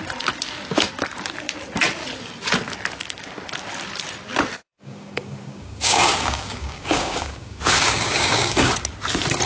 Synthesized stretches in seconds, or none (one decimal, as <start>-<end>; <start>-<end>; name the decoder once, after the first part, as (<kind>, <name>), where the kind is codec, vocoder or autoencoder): 4.6-8.7 (codec, DAC)